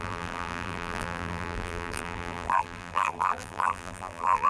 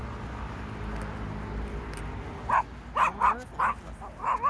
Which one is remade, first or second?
first